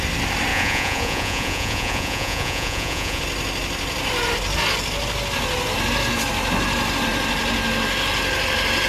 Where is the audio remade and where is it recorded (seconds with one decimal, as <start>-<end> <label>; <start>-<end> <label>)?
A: 0.0-0.5 recorded; 0.5-3.2 remade; 3.2-8.9 recorded